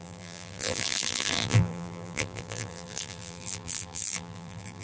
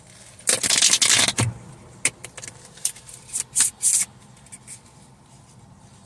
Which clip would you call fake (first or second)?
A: first